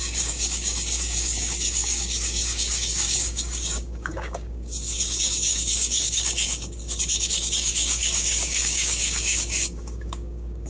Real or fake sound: fake